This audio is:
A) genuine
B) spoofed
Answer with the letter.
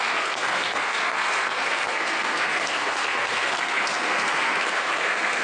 B